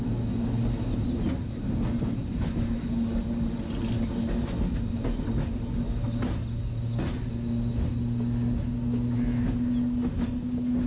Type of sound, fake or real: real